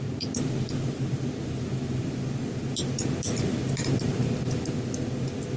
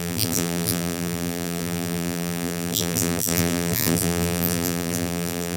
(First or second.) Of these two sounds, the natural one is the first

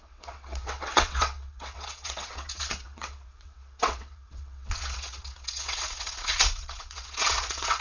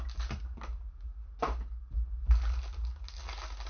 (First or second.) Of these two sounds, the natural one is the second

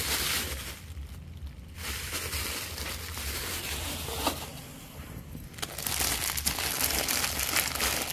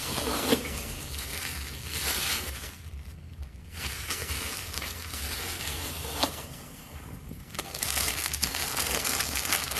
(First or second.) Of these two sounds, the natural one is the first